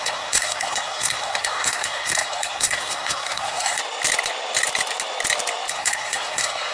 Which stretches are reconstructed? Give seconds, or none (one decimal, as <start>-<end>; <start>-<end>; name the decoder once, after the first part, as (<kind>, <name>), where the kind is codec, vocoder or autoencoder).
0.0-3.8 (codec, SNAC); 5.7-6.7